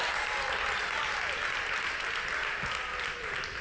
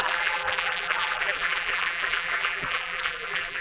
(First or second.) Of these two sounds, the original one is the first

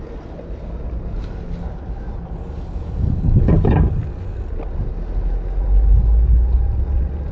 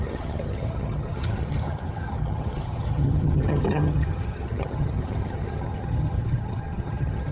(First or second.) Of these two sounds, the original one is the first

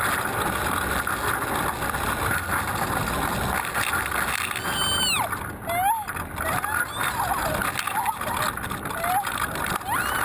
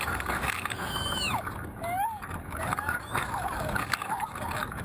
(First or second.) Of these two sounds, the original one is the first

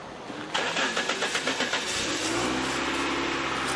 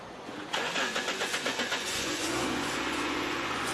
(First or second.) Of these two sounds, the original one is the first